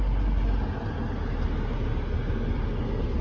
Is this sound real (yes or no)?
yes